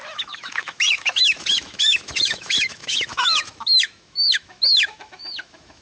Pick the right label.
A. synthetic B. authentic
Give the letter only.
A